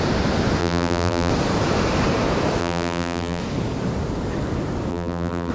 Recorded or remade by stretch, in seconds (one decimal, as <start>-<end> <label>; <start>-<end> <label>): 0.0-0.6 recorded; 0.6-1.3 remade; 1.3-2.6 recorded; 2.6-3.4 remade; 3.4-4.9 recorded; 4.9-5.5 remade